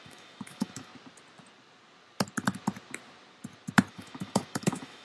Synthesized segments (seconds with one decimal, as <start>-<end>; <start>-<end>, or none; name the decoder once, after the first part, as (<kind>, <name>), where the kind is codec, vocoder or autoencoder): 0.0-0.9 (autoencoder, DAC-VAE); 3.9-5.0